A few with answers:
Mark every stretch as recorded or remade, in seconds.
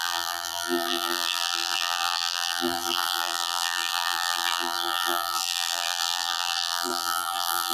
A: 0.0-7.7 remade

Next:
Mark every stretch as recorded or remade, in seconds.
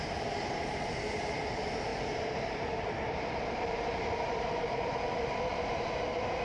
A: 0.0-1.9 recorded; 1.9-5.7 remade; 5.7-6.4 recorded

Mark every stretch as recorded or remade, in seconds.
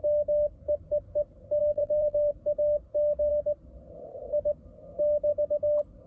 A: 0.0-1.6 recorded; 1.6-2.3 remade; 2.3-6.1 recorded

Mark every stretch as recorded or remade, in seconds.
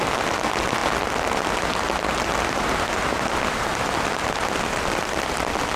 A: 0.0-5.8 recorded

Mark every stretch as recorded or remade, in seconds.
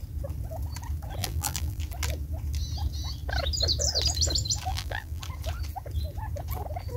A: 0.0-1.2 recorded; 1.2-1.8 remade; 1.8-4.7 recorded; 4.7-5.2 remade; 5.2-7.0 recorded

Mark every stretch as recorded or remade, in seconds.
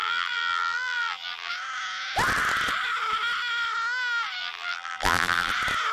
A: 0.0-1.5 remade; 1.5-4.4 recorded; 4.4-5.5 remade; 5.5-5.9 recorded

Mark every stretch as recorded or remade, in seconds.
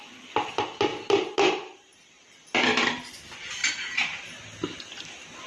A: 0.0-3.6 recorded; 3.6-4.2 remade; 4.2-5.5 recorded